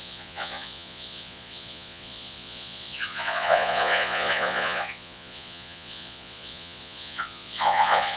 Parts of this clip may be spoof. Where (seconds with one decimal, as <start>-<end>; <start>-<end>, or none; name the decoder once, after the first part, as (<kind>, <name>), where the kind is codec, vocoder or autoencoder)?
0.0-8.2 (vocoder, Vocos)